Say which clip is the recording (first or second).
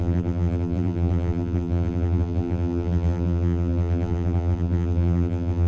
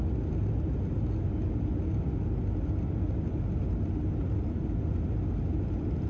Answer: second